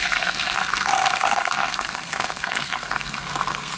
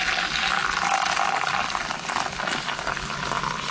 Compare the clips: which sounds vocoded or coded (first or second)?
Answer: first